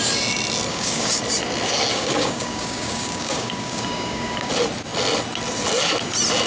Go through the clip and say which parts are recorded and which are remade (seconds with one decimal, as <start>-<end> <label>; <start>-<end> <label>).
0.0-0.7 recorded; 0.7-1.2 remade; 1.2-1.9 recorded; 1.9-4.5 remade; 4.5-6.5 recorded

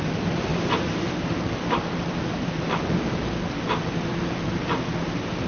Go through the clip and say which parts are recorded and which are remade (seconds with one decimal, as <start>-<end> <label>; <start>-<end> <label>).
0.0-0.5 recorded; 0.5-3.2 remade; 3.2-5.5 recorded

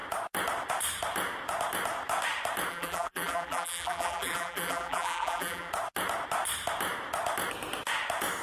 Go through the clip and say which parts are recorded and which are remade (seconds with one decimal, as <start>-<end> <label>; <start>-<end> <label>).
0.0-2.7 recorded; 2.7-5.7 remade; 5.7-8.4 recorded

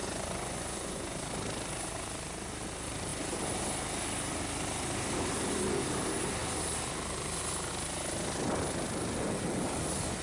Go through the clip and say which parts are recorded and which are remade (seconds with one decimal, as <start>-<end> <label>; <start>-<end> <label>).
0.0-1.2 remade; 1.2-10.2 recorded

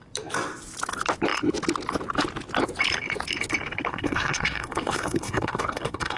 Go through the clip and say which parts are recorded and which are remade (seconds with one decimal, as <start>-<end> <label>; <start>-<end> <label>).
0.0-3.9 recorded; 3.9-6.2 remade

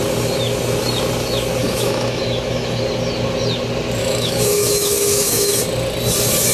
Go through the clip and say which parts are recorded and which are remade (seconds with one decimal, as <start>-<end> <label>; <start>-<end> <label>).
0.0-1.6 recorded; 1.6-2.8 remade; 2.8-4.0 recorded; 4.0-5.6 remade; 5.6-6.5 recorded

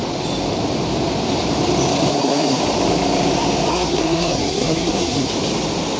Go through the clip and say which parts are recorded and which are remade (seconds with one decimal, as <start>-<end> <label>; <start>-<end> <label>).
0.0-2.1 recorded; 2.1-2.6 remade; 2.6-3.7 recorded; 3.7-5.3 remade; 5.3-6.0 recorded

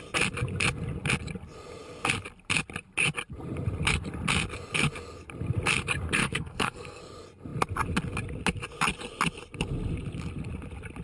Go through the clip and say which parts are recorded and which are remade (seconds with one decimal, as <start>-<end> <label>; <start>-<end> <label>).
0.0-6.2 recorded; 6.2-7.0 remade; 7.0-11.0 recorded